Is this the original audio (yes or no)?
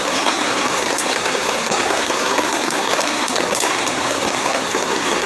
no